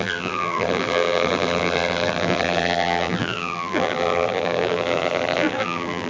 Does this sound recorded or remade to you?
remade